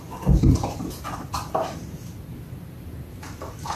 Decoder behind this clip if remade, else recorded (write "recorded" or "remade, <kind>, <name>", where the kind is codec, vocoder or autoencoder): recorded